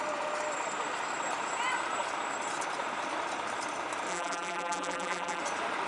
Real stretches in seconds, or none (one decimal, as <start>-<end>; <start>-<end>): 0.0-4.1; 5.4-5.9